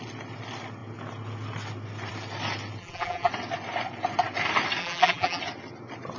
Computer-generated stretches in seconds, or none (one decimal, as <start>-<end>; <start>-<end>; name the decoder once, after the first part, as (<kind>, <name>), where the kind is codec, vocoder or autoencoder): 2.8-3.3 (vocoder, BigVGAN v2); 4.8-5.4